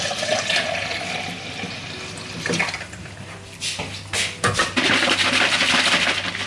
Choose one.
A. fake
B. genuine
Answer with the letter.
B